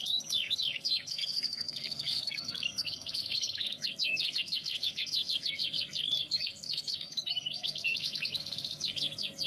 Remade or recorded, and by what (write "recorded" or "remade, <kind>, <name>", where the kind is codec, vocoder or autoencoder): remade, codec, SNAC